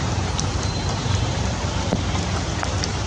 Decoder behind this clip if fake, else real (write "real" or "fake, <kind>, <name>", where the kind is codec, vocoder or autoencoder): fake, vocoder, BigVGAN v2